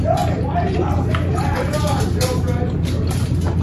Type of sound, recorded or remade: recorded